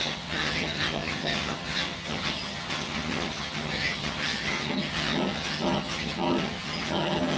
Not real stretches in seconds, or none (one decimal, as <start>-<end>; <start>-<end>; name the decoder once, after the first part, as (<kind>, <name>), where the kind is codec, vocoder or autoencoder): 0.0-7.4 (vocoder, HiFi-GAN)